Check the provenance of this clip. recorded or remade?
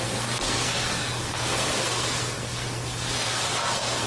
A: remade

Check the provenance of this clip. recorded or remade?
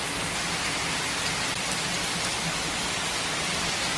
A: recorded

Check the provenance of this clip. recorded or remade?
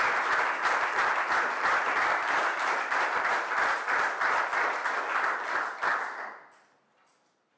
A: recorded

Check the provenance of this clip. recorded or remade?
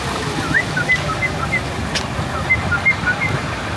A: recorded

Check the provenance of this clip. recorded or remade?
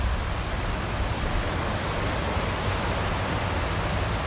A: recorded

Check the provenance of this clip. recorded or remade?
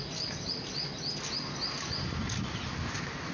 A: recorded